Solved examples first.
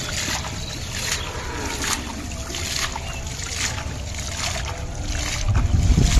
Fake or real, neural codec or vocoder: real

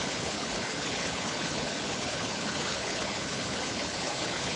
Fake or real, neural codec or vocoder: fake, codec, HILCodec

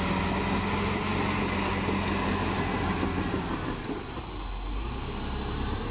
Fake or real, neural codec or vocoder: real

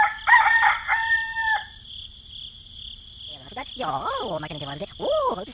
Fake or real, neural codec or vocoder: fake, vocoder, BigVGAN v2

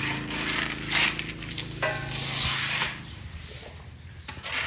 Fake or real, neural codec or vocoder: real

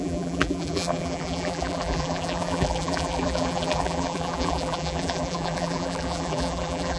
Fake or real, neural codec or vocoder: fake, vocoder, BigVGAN v2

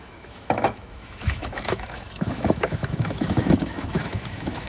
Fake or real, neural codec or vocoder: fake, autoencoder, DAC-VAE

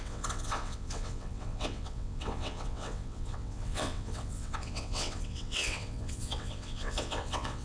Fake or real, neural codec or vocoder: fake, vocoder, WaveNeXt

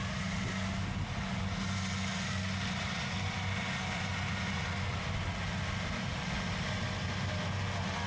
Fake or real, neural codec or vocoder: real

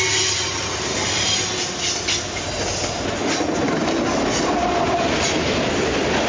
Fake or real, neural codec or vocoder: real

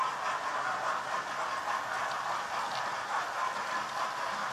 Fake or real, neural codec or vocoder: real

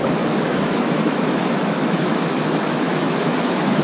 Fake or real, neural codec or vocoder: fake, autoencoder, DAC-VAE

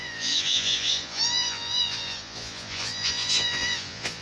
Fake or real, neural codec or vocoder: fake, vocoder, Vocos